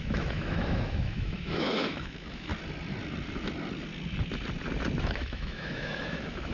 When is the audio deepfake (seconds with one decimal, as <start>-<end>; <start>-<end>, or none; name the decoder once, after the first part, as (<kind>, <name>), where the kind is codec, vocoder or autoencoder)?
0.0-2.5 (autoencoder, DAC-VAE); 5.0-6.5

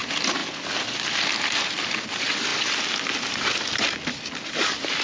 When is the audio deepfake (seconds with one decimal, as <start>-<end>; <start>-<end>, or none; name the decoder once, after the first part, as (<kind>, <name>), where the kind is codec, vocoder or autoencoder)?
none

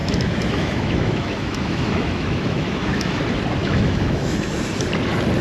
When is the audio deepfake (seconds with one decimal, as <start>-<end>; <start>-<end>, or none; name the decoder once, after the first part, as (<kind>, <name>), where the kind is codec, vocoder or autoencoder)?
0.0-3.2 (autoencoder, DAC-VAE); 3.6-4.5

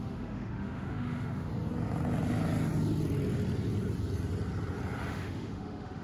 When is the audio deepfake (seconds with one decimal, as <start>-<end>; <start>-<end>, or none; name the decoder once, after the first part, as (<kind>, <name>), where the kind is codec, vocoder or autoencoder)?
0.0-1.5 (autoencoder, DAC-VAE); 5.1-6.0

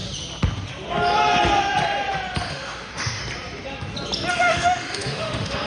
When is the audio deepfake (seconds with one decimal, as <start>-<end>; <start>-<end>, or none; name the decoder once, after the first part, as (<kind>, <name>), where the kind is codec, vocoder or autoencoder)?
2.5-3.2 (autoencoder, DAC-VAE); 4.3-5.7

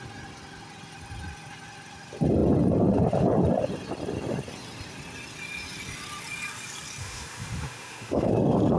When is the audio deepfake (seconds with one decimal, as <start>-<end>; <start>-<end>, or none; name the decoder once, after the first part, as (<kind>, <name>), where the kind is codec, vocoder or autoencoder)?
7.0-8.3 (autoencoder, DAC-VAE)

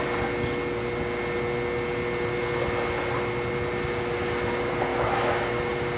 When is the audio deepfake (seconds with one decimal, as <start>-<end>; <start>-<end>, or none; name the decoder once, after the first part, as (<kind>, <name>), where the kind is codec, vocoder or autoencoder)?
4.9-5.6 (autoencoder, DAC-VAE)

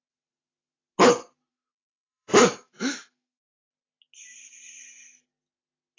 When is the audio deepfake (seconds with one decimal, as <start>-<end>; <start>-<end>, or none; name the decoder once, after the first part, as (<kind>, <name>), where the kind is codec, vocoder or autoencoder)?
1.5-3.7 (autoencoder, DAC-VAE)